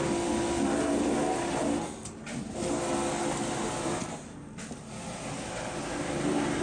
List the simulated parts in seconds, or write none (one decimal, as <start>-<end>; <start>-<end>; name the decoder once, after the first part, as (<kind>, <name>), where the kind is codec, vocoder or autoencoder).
none